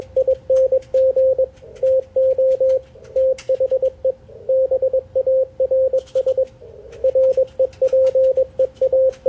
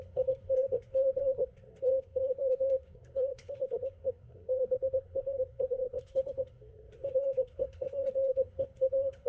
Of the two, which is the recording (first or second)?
first